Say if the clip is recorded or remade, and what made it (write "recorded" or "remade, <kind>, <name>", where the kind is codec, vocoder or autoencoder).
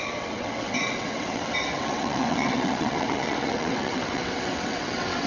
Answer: remade, vocoder, WaveNeXt